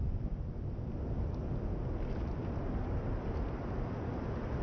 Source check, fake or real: real